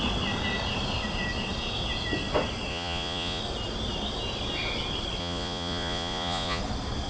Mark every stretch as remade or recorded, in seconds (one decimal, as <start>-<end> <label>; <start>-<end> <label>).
0.0-2.7 recorded; 2.7-3.4 remade; 3.4-5.2 recorded; 5.2-6.6 remade; 6.6-7.1 recorded